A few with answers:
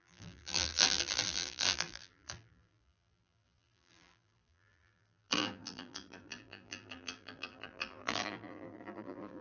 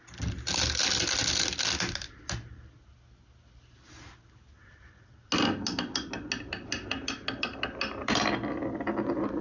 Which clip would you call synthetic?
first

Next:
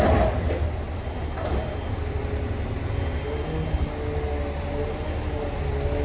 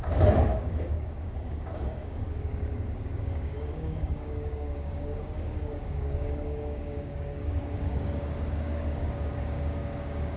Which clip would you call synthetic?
second